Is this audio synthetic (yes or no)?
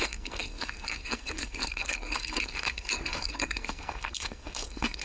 yes